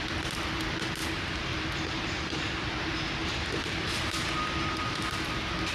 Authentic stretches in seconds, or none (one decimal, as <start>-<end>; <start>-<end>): 0.0-1.0; 2.7-3.2; 5.3-5.7